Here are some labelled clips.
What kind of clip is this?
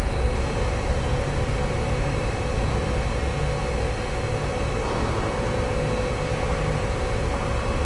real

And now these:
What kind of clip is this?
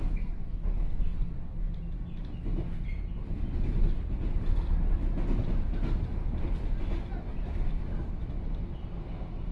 real